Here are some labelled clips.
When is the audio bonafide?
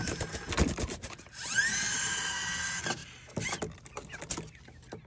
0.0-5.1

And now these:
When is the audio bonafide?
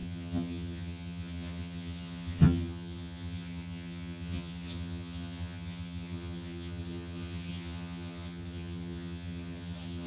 none